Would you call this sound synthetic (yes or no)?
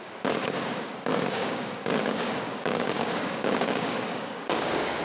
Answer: yes